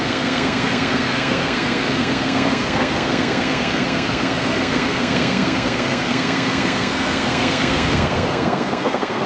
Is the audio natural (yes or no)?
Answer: no